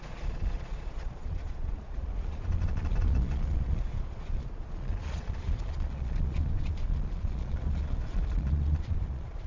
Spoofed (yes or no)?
yes